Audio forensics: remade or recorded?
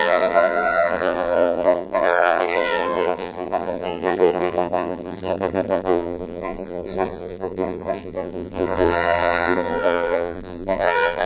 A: remade